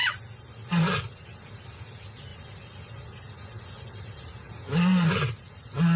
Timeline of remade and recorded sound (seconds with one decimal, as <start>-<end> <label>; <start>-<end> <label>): 0.0-6.0 recorded